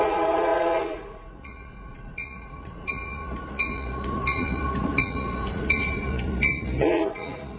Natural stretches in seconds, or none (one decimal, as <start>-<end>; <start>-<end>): none